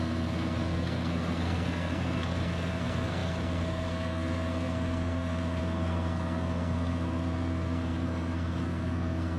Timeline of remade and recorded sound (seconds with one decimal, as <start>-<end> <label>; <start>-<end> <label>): 0.0-9.4 remade